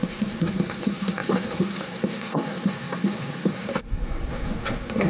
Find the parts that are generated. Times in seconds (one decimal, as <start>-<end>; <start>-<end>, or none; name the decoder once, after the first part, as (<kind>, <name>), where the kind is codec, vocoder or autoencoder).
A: 0.0-5.1 (codec, SNAC)